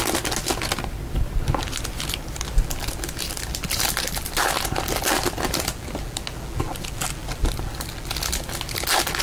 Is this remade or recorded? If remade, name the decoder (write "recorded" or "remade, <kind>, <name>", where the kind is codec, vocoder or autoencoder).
recorded